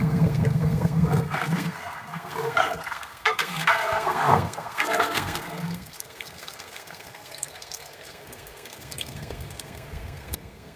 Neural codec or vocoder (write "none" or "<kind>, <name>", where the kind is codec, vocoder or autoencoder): codec, SNAC